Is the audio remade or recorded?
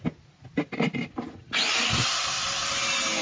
recorded